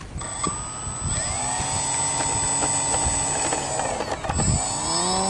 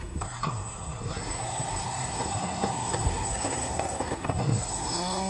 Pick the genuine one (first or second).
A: first